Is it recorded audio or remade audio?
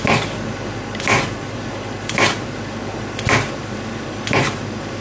recorded